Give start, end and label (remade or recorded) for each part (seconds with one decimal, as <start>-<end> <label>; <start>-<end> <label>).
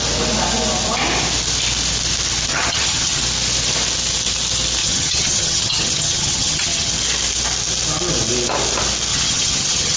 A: 0.0-2.5 recorded; 2.5-3.2 remade; 3.2-4.8 recorded; 4.8-6.9 remade; 6.9-9.1 recorded; 9.1-10.0 remade